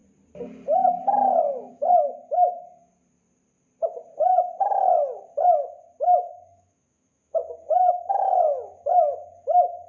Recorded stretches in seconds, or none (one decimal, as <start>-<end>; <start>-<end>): 0.0-1.7; 2.9-6.3